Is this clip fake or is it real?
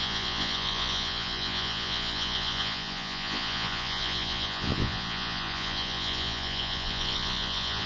fake